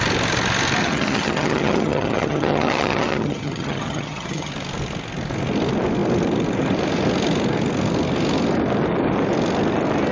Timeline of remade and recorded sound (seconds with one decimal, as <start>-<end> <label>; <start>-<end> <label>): 0.0-0.8 recorded; 0.8-4.5 remade; 4.5-10.1 recorded